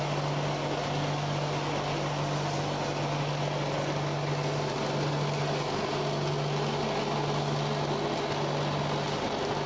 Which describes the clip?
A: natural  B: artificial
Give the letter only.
A